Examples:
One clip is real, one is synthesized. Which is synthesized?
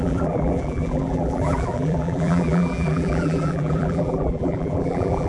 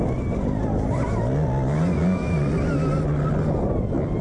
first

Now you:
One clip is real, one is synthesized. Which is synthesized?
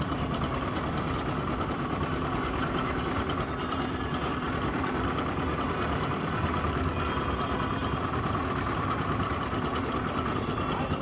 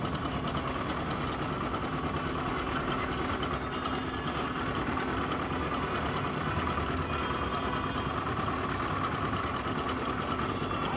first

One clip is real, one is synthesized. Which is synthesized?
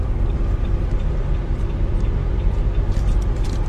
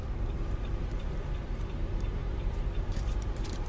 second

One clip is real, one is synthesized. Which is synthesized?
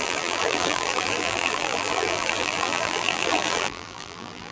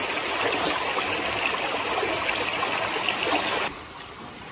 first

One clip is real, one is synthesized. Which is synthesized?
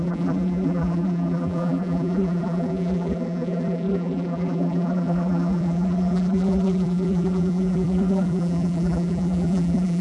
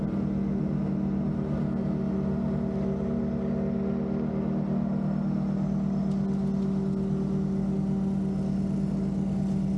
first